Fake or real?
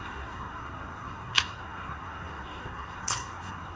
fake